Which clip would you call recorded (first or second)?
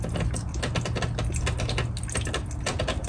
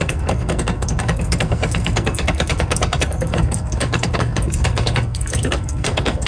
first